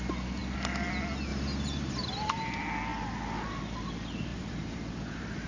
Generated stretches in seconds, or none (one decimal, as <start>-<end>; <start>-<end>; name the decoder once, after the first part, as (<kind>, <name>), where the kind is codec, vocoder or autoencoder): 1.3-2.3 (vocoder, BigVGAN v2); 4.3-5.5